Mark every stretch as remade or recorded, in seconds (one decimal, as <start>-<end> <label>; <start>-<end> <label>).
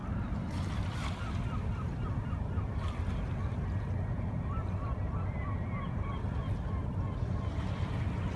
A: 0.0-3.0 remade; 3.0-8.4 recorded